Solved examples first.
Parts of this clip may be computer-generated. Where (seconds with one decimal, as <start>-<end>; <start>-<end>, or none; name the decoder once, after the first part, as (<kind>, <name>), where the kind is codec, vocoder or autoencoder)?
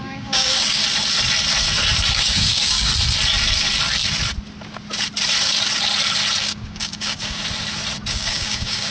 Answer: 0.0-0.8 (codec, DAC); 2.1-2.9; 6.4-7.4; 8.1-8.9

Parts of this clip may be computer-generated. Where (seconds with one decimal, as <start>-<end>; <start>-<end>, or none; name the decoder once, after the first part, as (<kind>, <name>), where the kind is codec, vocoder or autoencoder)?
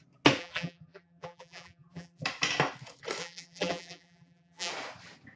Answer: 0.4-2.2 (vocoder, BigVGAN v2); 3.2-4.7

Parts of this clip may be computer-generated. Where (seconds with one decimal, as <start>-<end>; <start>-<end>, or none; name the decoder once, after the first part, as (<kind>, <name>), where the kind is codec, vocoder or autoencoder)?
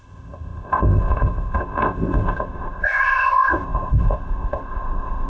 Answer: 0.0-5.3 (codec, ZipCodec)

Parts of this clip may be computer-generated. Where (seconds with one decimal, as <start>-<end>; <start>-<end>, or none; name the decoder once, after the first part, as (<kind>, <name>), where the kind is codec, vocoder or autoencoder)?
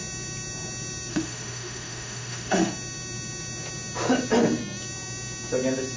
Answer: 1.1-2.7 (autoencoder, DAC-VAE)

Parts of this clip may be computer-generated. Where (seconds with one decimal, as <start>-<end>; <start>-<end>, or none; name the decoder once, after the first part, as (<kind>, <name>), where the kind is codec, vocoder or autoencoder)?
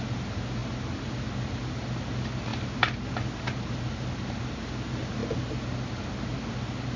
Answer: none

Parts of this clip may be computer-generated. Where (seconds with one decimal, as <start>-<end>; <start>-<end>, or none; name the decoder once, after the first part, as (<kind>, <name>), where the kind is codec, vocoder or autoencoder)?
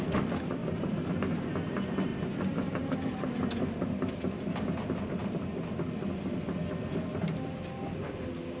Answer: 0.6-1.1 (vocoder, BigVGAN v2); 5.2-6.5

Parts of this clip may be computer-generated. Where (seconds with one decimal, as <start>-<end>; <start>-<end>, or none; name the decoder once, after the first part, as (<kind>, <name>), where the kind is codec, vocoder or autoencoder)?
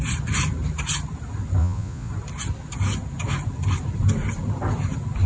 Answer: 1.6-2.1 (vocoder, Vocos)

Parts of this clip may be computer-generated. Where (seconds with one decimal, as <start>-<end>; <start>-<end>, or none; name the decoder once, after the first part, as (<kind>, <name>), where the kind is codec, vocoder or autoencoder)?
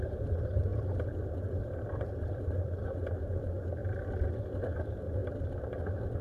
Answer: 0.0-3.8 (vocoder, BigVGAN v2); 4.8-5.2